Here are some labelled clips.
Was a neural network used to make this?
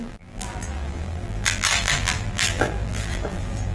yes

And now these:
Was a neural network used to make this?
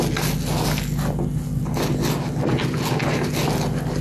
no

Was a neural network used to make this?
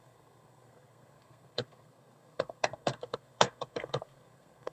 yes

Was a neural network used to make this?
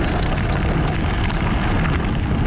no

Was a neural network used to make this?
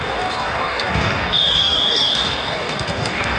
yes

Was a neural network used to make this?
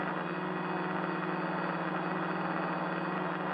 no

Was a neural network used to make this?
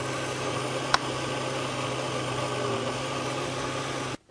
no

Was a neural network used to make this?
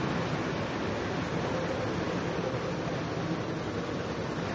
no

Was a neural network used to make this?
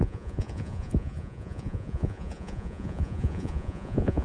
yes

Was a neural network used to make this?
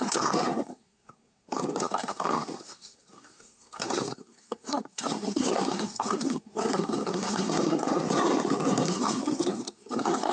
yes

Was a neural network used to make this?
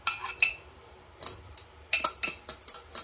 no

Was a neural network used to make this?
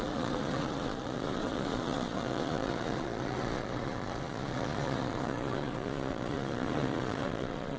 yes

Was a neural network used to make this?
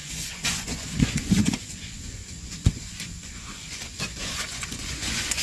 yes